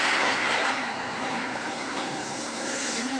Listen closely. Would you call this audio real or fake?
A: fake